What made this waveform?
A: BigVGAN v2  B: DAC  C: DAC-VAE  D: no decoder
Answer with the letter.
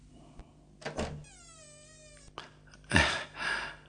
D